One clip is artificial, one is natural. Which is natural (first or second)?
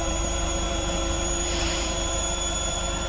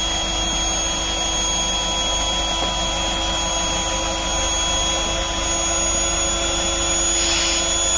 second